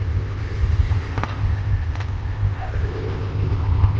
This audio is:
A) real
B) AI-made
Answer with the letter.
B